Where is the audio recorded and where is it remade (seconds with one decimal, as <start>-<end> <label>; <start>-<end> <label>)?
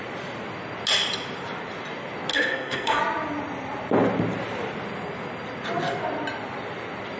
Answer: 0.0-2.3 recorded; 2.3-3.0 remade; 3.0-7.2 recorded